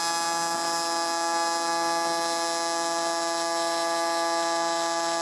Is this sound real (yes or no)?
yes